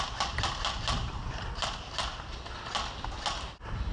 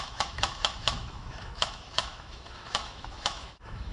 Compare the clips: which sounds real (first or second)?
first